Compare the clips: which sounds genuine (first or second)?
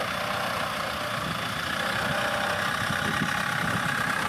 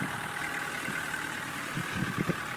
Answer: first